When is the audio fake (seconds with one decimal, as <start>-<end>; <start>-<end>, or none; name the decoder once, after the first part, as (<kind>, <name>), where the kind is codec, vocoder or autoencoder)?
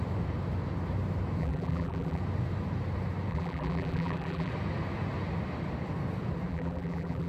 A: 1.4-2.2 (vocoder, BigVGAN v2); 3.3-4.5; 6.5-7.3